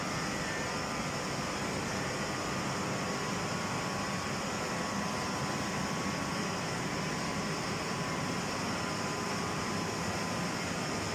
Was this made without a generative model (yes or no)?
yes